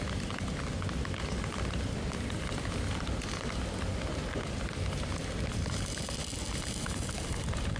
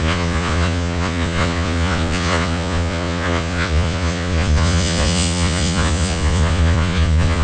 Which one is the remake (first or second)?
second